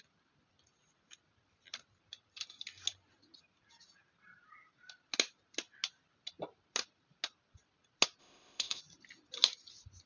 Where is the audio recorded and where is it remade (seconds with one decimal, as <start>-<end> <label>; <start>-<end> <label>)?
0.0-8.2 recorded; 8.2-8.8 remade; 8.8-10.1 recorded